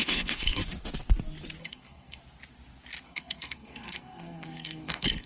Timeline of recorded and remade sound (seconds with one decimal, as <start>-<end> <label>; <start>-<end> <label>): 0.0-0.6 remade; 0.6-1.6 recorded; 1.6-2.2 remade; 2.2-3.0 recorded; 3.0-5.3 remade